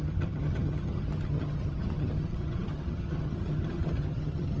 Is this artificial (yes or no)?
yes